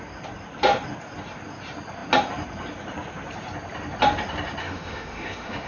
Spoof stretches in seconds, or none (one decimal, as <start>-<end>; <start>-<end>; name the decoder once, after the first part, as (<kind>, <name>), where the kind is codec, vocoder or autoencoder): 4.6-5.7 (autoencoder, DAC-VAE)